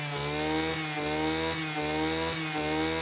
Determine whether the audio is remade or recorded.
recorded